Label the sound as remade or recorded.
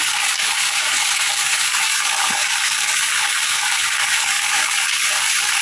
remade